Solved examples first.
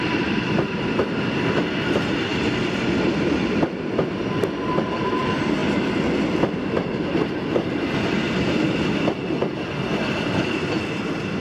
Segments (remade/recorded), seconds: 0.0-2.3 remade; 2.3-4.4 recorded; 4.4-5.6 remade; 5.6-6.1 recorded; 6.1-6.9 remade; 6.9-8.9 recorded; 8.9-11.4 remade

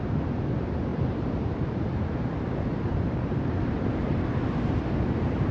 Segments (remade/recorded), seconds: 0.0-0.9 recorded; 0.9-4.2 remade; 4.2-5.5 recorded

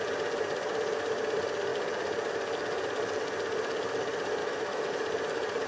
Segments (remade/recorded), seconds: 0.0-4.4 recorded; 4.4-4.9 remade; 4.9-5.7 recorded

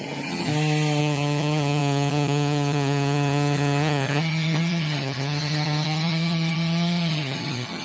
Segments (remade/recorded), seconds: 0.0-0.5 remade; 0.5-1.0 recorded; 1.0-7.8 remade

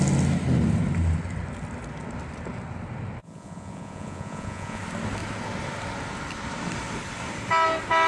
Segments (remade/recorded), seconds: 0.0-3.2 recorded; 3.2-4.8 remade; 4.8-8.1 recorded

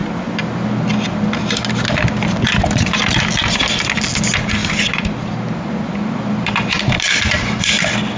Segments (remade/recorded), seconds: 0.0-4.6 recorded; 4.6-7.6 remade; 7.6-8.2 recorded

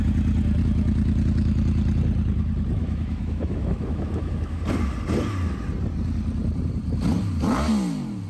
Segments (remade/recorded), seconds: 0.0-2.8 recorded; 2.8-4.6 remade; 4.6-8.3 recorded

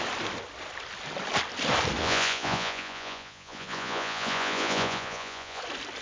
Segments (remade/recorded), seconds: 0.0-2.0 recorded; 2.0-5.6 remade; 5.6-6.0 recorded